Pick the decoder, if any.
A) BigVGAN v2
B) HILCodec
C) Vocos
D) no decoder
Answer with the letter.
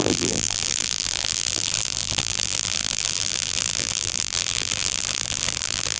A